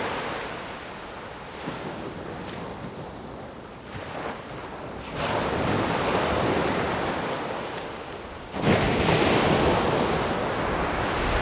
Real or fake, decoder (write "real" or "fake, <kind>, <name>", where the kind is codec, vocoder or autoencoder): real